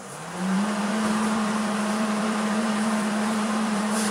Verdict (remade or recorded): remade